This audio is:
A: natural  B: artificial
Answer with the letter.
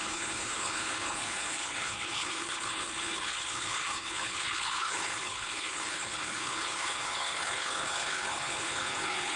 B